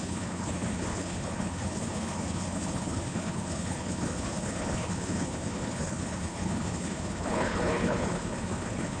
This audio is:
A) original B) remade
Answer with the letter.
B